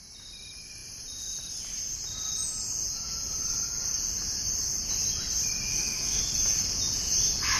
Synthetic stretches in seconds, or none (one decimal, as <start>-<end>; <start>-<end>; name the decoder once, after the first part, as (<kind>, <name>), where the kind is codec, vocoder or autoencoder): 5.7-6.2 (codec, SNAC)